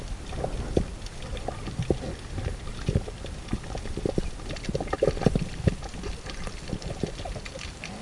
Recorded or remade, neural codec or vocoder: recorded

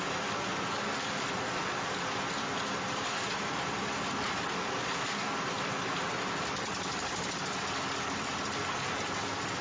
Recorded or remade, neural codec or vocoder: recorded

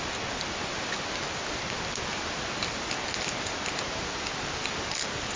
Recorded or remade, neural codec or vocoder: recorded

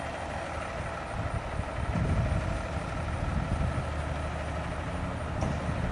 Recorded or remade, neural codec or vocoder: recorded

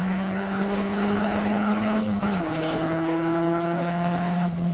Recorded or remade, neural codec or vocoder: remade, codec, HILCodec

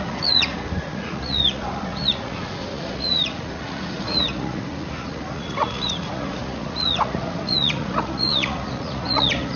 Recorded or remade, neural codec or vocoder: remade, vocoder, Vocos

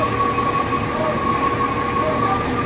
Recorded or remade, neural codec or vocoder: recorded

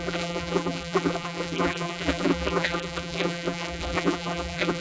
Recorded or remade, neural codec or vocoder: remade, vocoder, BigVGAN v2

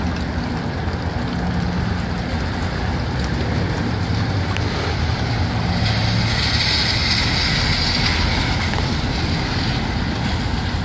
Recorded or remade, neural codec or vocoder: recorded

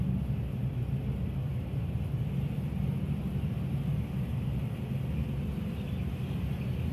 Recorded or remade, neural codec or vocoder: recorded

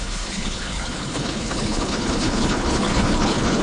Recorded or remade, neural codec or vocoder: remade, codec, HILCodec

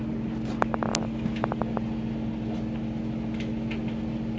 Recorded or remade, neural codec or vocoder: recorded